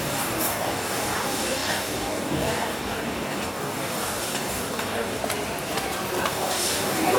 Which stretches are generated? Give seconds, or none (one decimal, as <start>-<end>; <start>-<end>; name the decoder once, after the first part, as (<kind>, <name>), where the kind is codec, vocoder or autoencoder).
0.0-5.2 (codec, DAC); 6.3-7.2